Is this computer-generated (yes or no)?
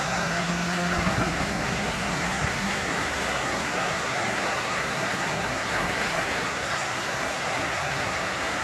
yes